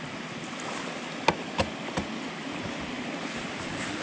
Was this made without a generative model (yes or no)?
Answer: yes